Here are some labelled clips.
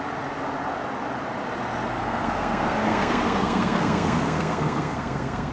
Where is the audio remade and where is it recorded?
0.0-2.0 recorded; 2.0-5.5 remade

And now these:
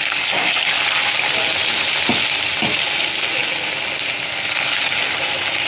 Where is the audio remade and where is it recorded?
0.0-5.7 recorded

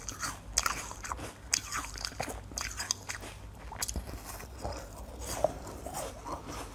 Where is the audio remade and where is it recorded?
0.0-6.7 recorded

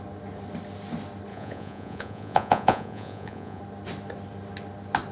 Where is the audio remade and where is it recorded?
0.0-1.3 recorded; 1.3-3.6 remade; 3.6-5.1 recorded

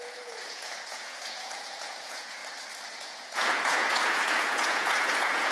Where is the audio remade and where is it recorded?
0.0-2.4 remade; 2.4-2.9 recorded; 2.9-5.5 remade

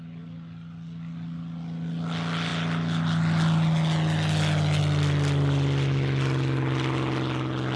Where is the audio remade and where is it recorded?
0.0-7.8 recorded